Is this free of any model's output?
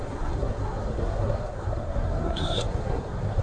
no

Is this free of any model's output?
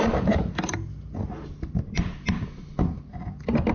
yes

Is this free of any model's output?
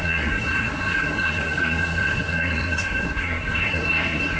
no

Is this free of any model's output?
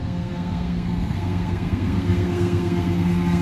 no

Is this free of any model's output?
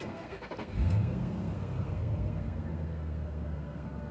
no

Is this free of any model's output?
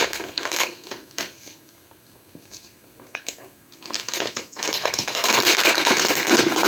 no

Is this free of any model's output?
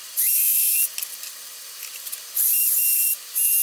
yes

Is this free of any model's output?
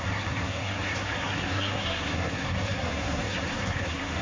no